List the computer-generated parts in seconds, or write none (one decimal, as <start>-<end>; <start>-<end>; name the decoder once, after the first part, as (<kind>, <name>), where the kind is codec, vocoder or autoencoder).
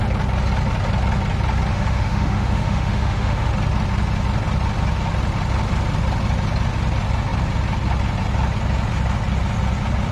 1.7-3.5 (autoencoder, DAC-VAE)